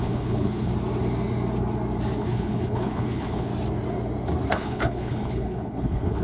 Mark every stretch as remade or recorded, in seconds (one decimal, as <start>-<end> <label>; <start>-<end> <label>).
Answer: 0.0-0.7 remade; 0.7-2.2 recorded; 2.2-3.5 remade; 3.5-4.5 recorded; 4.5-6.2 remade